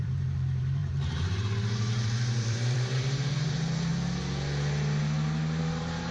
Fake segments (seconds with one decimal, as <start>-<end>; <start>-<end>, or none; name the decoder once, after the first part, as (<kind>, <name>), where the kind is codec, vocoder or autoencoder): 0.0-3.9 (vocoder, BigVGAN v2); 5.6-6.1